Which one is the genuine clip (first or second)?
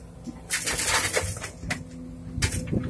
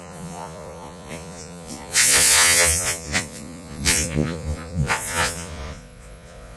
first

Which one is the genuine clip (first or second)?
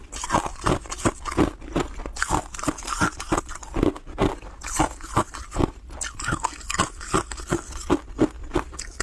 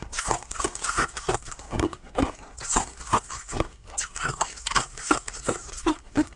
first